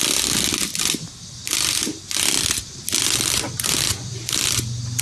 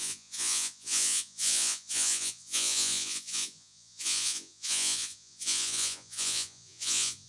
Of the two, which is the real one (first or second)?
first